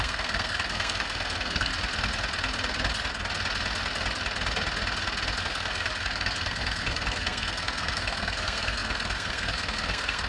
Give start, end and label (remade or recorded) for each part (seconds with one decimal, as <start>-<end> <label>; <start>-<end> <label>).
0.0-1.7 remade; 1.7-5.4 recorded; 5.4-10.3 remade